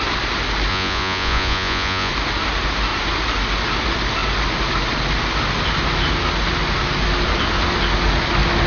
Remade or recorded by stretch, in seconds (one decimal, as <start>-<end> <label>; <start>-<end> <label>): 0.0-0.7 recorded; 0.7-2.1 remade; 2.1-8.7 recorded